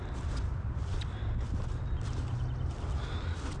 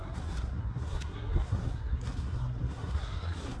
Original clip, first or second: first